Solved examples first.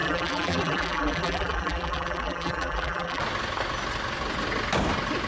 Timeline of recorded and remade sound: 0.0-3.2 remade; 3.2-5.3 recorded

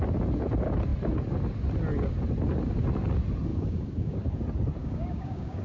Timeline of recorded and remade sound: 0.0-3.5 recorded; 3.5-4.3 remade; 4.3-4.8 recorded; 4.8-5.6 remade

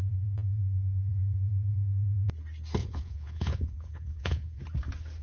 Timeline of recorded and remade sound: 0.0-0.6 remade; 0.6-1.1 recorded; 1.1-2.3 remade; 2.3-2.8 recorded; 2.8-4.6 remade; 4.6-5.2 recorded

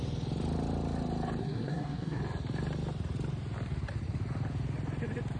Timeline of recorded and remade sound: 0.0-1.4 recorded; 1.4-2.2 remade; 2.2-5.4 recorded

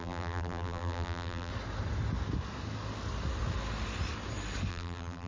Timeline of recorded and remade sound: 0.0-1.5 remade; 1.5-4.7 recorded; 4.7-5.3 remade